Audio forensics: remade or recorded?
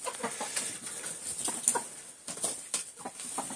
recorded